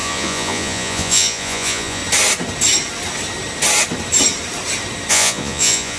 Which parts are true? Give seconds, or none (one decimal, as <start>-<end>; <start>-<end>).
2.0-5.1